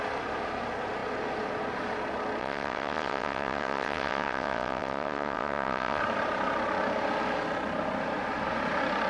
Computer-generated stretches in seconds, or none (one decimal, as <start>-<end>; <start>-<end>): 2.4-6.0